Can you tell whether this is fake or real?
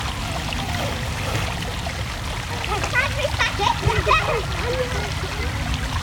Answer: real